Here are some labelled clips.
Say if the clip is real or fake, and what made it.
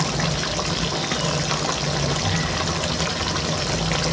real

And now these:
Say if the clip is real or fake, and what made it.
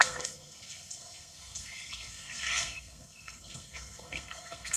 fake, codec, SNAC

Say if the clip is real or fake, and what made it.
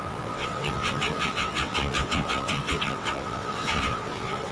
fake, vocoder, WaveNeXt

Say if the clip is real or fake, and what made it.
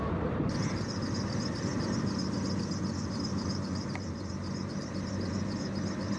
fake, vocoder, BigVGAN v2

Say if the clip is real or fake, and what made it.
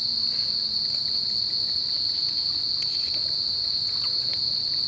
real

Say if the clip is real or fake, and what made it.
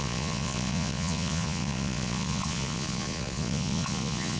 fake, vocoder, Vocos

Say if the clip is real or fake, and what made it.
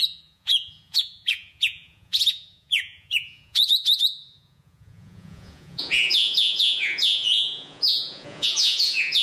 fake, vocoder, Vocos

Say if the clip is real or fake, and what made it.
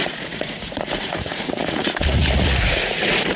fake, vocoder, Vocos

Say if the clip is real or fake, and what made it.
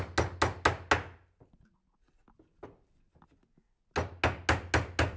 real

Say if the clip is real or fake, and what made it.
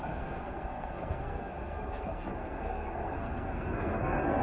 fake, codec, SNAC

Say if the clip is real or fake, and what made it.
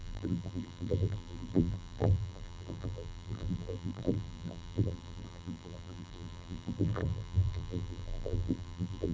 fake, vocoder, BigVGAN v2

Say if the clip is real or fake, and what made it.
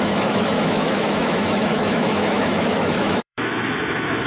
fake, autoencoder, DAC-VAE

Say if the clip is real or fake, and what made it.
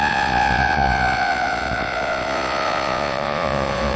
fake, vocoder, Vocos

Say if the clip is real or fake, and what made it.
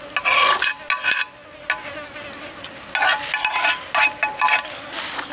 real